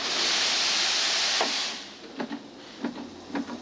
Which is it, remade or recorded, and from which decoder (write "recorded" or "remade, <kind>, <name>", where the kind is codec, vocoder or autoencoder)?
recorded